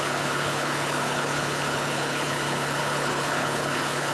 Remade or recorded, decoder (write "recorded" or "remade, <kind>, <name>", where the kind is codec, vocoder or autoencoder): remade, codec, HILCodec